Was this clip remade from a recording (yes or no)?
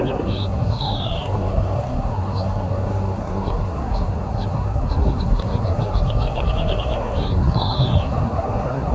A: yes